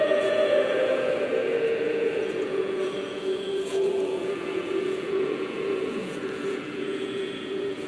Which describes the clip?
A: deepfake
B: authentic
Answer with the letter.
A